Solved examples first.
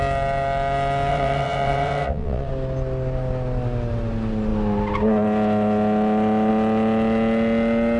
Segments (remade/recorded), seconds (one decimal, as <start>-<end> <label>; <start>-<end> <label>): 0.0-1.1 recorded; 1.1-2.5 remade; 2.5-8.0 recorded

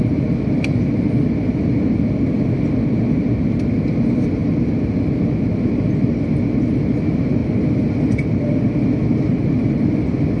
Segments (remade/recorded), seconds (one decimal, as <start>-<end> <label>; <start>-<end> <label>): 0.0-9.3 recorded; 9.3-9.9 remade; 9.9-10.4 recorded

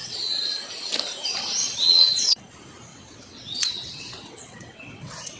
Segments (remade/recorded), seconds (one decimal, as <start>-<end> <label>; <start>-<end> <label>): 0.0-0.6 remade; 0.6-1.6 recorded; 1.6-2.4 remade; 2.4-2.9 recorded; 2.9-5.4 remade

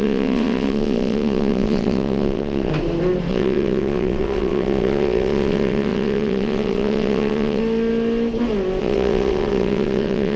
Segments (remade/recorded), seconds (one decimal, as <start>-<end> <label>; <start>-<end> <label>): 0.0-2.7 remade; 2.7-3.3 recorded; 3.3-7.6 remade; 7.6-8.8 recorded; 8.8-10.4 remade

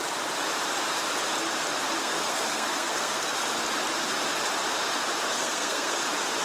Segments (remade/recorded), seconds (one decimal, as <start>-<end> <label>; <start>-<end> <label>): 0.0-2.0 recorded; 2.0-3.3 remade; 3.3-5.3 recorded; 5.3-6.0 remade; 6.0-6.4 recorded